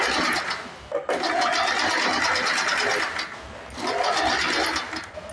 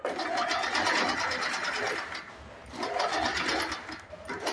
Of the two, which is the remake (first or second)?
second